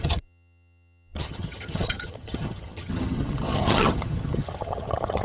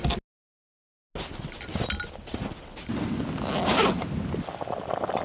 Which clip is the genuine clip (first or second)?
second